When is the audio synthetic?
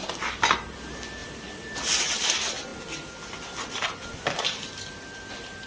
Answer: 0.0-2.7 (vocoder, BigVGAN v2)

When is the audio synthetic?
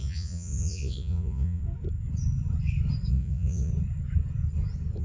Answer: 0.0-1.6 (vocoder, Vocos); 3.1-3.7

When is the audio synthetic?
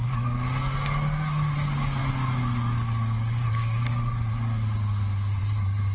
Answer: none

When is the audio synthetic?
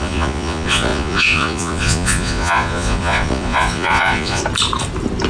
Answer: 0.0-4.4 (vocoder, Vocos)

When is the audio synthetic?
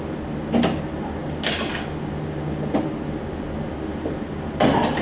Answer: none